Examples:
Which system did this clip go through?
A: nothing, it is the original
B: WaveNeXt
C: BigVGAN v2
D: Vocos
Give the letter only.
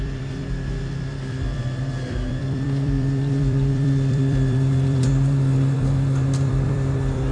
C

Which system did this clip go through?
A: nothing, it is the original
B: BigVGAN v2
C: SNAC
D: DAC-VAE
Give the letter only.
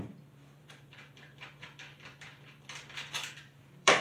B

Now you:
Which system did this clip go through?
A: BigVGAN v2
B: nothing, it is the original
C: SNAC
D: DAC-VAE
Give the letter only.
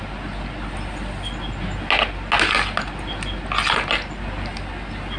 B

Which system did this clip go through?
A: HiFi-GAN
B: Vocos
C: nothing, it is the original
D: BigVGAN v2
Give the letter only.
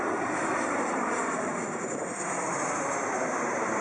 D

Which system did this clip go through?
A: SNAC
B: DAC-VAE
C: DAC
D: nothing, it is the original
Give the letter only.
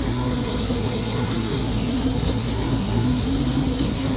A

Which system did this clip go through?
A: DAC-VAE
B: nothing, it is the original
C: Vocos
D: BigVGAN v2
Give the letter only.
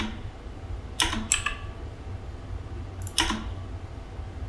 B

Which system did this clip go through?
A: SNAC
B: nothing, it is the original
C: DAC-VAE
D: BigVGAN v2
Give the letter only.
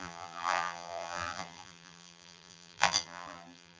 D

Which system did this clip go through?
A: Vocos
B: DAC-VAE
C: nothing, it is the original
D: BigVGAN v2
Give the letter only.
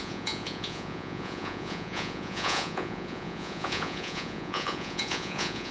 A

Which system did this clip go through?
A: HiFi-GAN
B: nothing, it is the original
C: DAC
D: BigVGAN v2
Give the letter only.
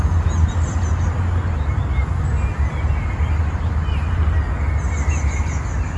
B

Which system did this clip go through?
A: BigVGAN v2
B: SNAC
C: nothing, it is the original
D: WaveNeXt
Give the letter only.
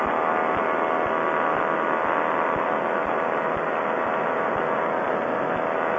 C